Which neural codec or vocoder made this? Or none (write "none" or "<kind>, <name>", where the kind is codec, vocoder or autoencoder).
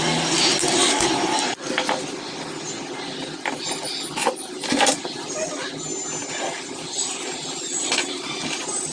none